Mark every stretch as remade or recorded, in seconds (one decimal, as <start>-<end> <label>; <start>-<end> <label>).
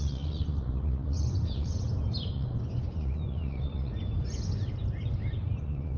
0.0-1.7 remade; 1.7-2.2 recorded; 2.2-3.9 remade; 3.9-5.6 recorded; 5.6-6.0 remade